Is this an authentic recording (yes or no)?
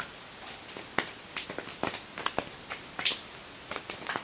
yes